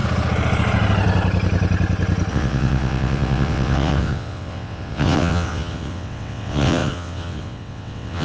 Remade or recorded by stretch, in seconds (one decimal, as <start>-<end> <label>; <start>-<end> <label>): 0.0-2.3 recorded; 2.3-8.2 remade